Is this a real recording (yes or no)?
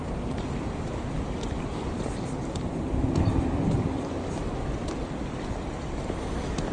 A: yes